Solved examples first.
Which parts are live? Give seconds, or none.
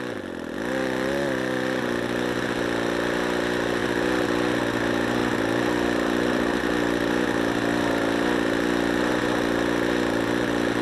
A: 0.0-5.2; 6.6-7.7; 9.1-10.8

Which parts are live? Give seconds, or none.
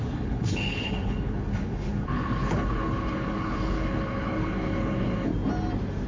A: 5.3-6.1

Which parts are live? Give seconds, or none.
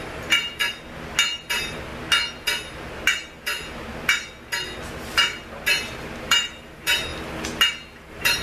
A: 0.6-1.5; 1.9-6.2; 7.1-8.0